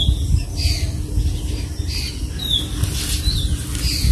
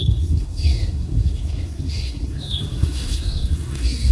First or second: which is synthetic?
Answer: second